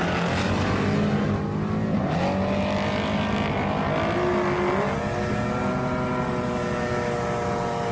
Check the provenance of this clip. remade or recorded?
recorded